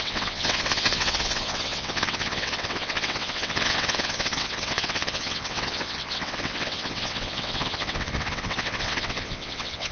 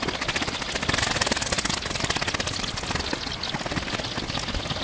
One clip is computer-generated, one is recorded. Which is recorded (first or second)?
second